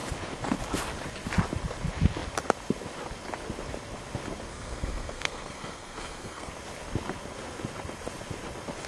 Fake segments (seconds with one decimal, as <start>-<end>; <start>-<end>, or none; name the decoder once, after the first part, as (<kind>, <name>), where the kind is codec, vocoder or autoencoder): 4.5-6.5 (codec, SNAC)